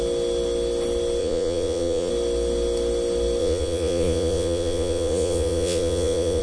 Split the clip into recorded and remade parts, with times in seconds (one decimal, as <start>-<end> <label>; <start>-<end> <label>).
0.0-1.2 recorded; 1.2-2.1 remade; 2.1-3.4 recorded; 3.4-6.4 remade